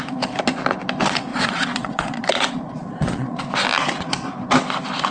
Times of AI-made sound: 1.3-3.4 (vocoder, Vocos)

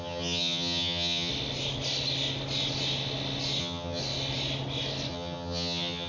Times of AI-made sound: 0.0-1.3 (vocoder, HiFi-GAN); 3.6-4.0; 5.1-6.1

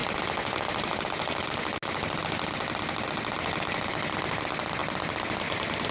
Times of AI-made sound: 0.0-1.0 (vocoder, BigVGAN v2)

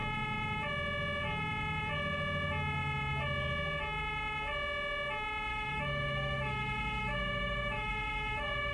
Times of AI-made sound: 5.5-8.7 (autoencoder, DAC-VAE)

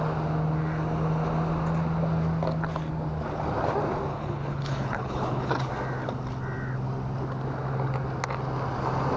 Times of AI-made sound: 4.1-5.7 (codec, HILCodec)

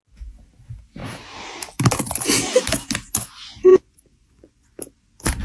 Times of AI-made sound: 3.7-4.8 (vocoder, Vocos)

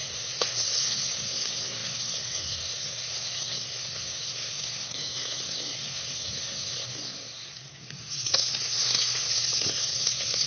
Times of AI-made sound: 0.0-10.5 (codec, SNAC)